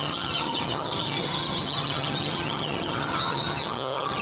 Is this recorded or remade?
remade